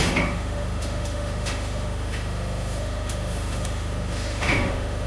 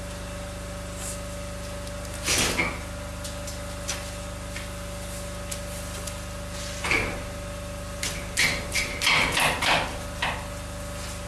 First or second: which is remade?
first